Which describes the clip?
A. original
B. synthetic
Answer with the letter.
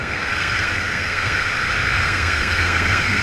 B